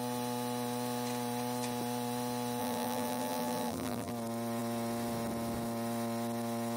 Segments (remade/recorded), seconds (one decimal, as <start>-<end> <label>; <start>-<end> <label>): 0.0-2.6 recorded; 2.6-4.1 remade; 4.1-6.8 recorded